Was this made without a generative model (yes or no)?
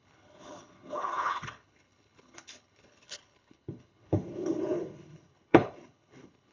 no